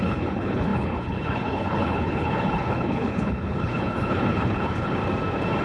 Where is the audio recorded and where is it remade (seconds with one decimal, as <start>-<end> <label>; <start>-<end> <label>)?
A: 0.0-5.0 remade; 5.0-5.6 recorded